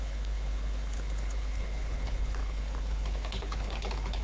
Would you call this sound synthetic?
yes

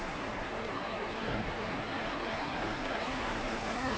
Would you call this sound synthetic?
yes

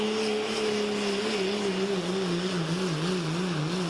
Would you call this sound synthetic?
no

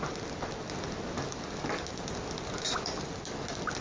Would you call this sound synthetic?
no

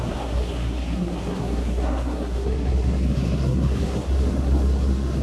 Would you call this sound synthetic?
yes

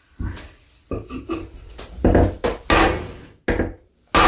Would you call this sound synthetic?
no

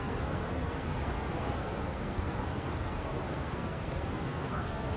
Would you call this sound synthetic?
yes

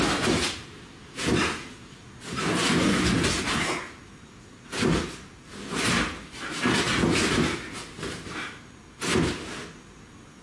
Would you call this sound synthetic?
no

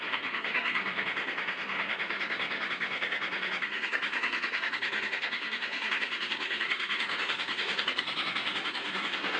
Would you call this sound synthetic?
yes